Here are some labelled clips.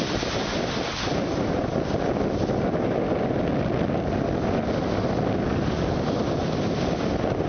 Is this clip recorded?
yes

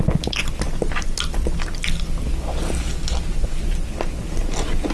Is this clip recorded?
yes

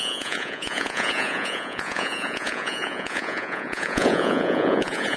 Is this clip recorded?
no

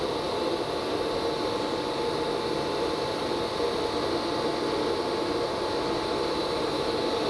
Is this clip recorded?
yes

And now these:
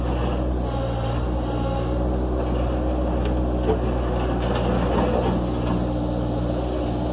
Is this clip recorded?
yes